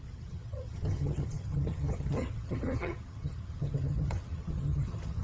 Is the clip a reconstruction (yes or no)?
yes